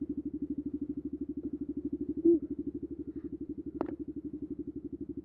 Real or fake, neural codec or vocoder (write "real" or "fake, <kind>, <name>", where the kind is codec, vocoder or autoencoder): real